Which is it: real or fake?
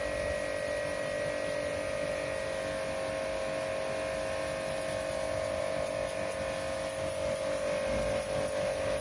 real